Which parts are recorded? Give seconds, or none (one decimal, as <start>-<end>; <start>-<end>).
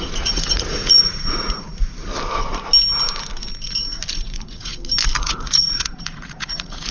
1.7-4.1; 4.7-5.2